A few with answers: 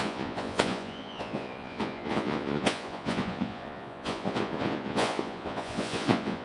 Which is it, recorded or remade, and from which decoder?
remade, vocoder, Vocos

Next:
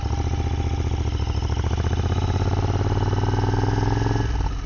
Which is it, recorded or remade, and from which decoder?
recorded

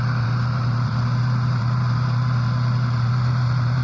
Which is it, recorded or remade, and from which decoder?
remade, vocoder, BigVGAN v2